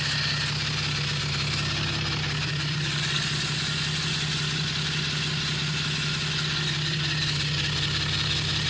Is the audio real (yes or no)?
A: yes